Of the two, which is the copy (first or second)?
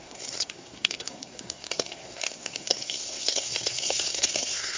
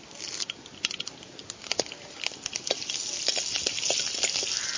first